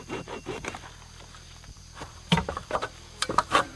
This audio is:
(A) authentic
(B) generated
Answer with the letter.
B